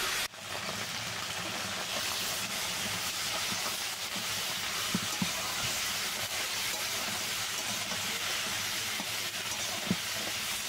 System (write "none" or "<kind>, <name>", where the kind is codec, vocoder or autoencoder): none